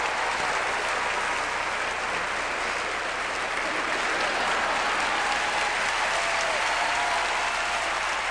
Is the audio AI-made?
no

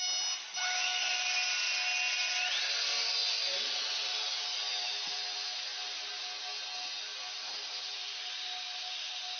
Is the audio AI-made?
no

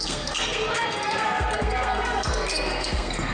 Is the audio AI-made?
yes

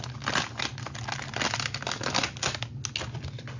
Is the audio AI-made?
no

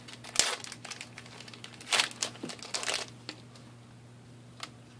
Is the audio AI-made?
no